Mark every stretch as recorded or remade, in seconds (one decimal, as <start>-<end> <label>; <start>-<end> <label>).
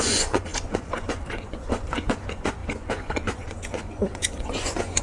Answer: 0.0-5.0 remade